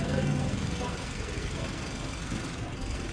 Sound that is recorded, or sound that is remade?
remade